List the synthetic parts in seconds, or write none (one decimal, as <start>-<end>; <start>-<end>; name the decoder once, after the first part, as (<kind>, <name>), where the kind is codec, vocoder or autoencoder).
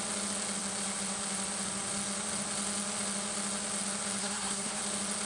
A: 4.2-4.8 (codec, SNAC)